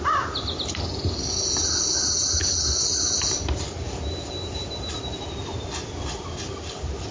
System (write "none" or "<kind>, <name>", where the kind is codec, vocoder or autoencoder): none